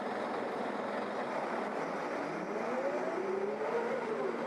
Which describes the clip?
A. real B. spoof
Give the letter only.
A